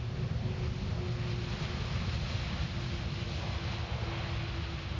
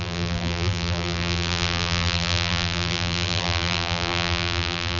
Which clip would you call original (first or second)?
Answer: first